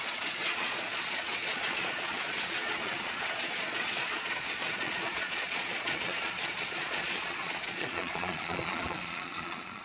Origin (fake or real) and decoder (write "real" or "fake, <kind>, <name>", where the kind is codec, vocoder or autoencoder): fake, vocoder, Vocos